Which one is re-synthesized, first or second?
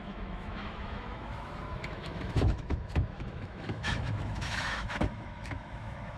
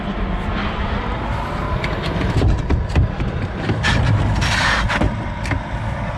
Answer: first